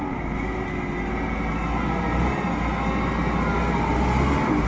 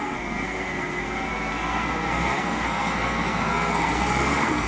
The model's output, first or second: second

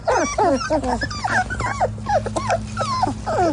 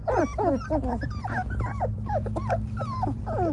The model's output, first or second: second